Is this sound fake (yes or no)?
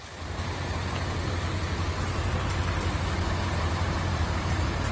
no